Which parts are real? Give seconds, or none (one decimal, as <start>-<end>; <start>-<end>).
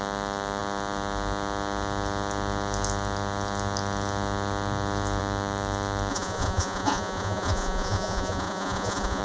0.0-6.1